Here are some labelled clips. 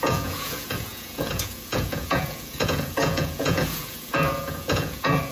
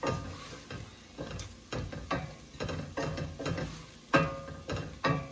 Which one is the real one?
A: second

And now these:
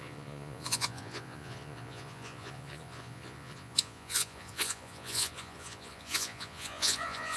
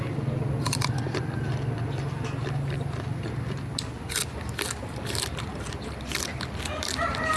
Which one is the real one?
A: second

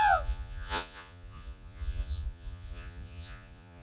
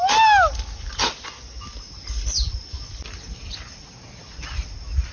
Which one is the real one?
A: second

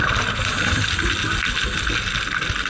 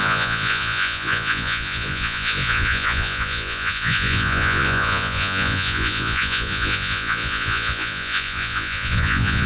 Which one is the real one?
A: first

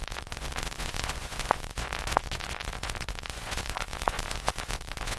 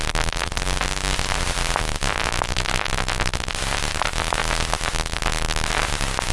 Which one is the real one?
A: second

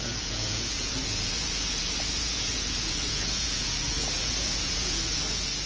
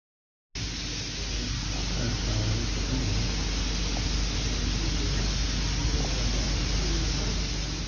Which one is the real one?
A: second